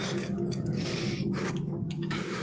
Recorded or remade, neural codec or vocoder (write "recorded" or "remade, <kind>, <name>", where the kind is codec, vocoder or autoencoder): remade, codec, DAC